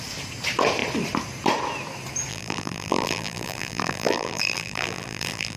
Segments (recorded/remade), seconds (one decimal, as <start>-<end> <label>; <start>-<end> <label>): 0.0-2.3 recorded; 2.3-5.6 remade